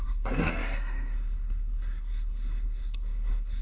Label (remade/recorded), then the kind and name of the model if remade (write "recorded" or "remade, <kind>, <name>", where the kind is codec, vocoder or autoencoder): remade, codec, SNAC